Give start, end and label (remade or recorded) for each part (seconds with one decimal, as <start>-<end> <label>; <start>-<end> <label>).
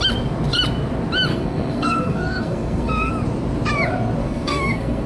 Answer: 0.0-1.3 recorded; 1.3-3.1 remade; 3.1-4.2 recorded; 4.2-5.1 remade